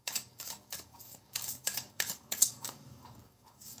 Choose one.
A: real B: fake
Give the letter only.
B